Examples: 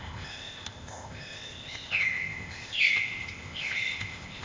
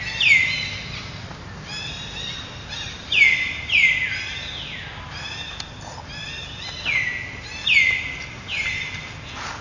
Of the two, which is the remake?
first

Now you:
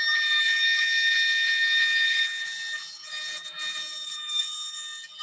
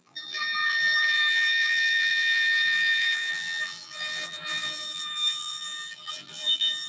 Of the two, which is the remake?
second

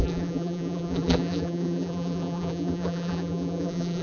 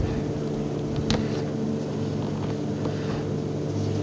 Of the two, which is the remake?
first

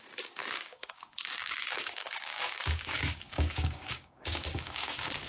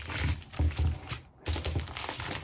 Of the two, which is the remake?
first